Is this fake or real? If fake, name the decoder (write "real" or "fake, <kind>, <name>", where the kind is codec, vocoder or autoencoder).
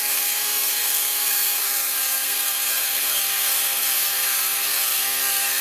fake, codec, SNAC